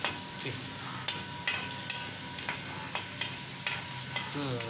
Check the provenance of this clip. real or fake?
real